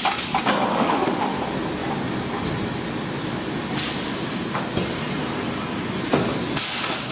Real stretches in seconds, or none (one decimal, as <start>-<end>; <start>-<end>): 0.0-0.7; 1.4-7.1